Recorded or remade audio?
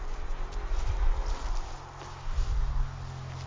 recorded